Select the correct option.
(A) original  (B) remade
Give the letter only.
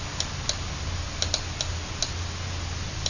A